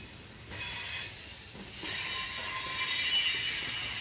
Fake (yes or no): no